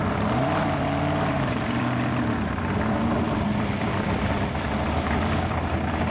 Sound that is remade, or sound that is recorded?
remade